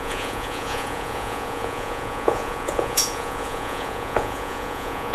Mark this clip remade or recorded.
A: remade